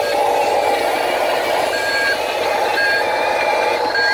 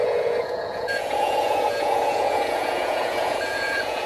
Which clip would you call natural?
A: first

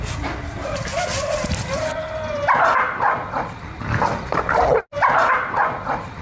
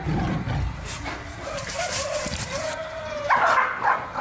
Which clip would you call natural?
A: first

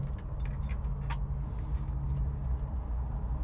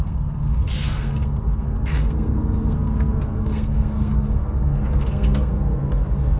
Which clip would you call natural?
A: first